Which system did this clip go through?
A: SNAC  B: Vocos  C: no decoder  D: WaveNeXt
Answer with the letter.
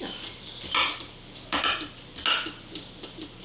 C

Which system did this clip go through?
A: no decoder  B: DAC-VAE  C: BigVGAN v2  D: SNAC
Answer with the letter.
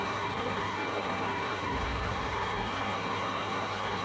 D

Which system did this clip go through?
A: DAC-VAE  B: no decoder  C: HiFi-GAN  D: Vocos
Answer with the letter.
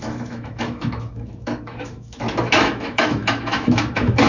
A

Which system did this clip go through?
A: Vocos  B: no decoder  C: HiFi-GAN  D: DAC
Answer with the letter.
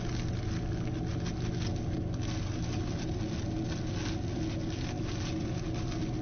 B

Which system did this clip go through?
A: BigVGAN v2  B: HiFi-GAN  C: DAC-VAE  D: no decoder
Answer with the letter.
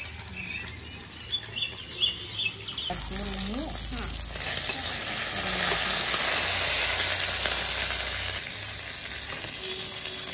D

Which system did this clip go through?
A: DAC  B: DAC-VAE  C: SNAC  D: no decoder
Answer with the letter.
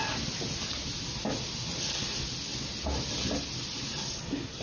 D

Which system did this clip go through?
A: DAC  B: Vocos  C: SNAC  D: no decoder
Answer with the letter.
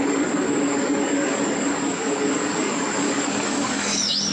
A